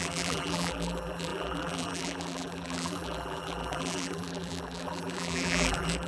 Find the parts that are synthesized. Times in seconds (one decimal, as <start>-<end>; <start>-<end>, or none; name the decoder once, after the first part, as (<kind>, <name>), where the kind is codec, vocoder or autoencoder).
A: 0.0-6.1 (vocoder, BigVGAN v2)